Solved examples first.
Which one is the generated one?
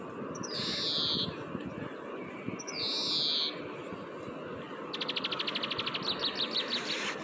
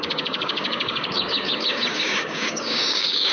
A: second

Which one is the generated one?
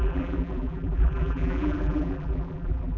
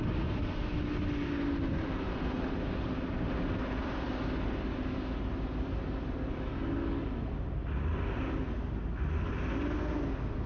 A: first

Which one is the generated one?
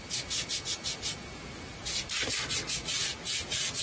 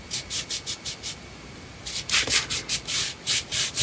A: second